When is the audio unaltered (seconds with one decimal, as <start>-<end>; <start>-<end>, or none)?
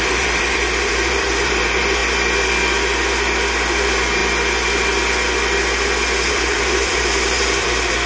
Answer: 2.0-3.7; 4.2-6.3